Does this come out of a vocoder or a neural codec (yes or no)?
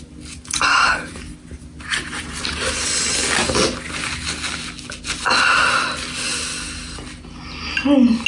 no